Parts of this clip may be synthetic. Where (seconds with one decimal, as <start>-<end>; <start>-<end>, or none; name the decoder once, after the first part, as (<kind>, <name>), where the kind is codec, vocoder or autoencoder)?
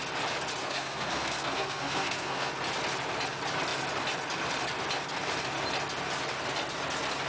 0.6-2.5 (codec, SNAC)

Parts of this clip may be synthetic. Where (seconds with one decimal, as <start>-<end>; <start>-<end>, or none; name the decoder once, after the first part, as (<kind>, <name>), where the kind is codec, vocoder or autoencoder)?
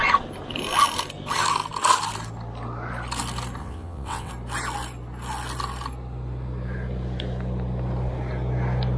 3.6-4.3 (vocoder, WaveNeXt)